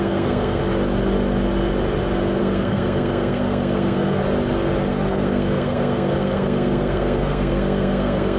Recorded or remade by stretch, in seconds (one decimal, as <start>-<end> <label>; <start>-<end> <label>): 0.0-0.6 remade; 0.6-2.4 recorded; 2.4-4.2 remade; 4.2-4.9 recorded; 4.9-8.4 remade